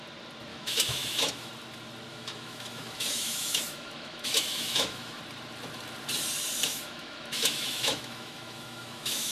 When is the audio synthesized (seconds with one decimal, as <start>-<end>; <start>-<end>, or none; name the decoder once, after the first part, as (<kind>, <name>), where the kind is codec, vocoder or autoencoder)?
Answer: 0.5-1.5 (autoencoder, DAC-VAE); 2.1-5.2; 6.7-9.3